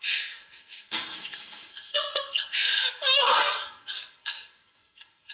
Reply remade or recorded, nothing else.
remade